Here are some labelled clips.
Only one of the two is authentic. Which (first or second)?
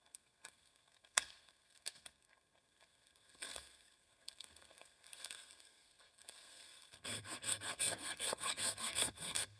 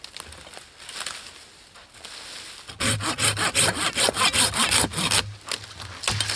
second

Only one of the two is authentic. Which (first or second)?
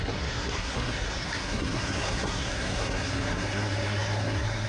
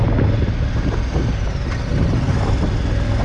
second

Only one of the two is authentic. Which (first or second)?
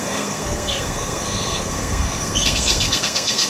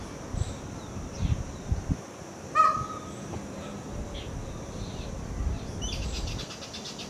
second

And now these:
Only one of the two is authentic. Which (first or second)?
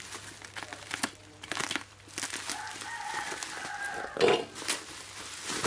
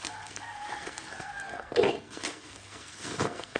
first